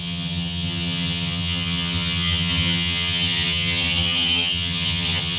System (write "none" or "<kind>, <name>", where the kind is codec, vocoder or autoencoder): vocoder, HiFi-GAN